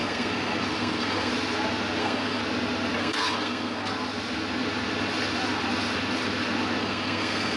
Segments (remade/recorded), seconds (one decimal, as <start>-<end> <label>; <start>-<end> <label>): 0.0-1.3 remade; 1.3-2.0 recorded; 2.0-2.4 remade; 2.4-3.0 recorded; 3.0-3.9 remade; 3.9-6.8 recorded; 6.8-7.6 remade